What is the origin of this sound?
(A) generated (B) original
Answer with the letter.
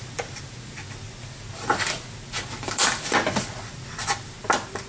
B